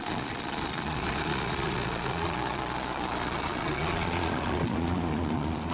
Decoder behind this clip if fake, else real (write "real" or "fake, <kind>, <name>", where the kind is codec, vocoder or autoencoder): fake, vocoder, Vocos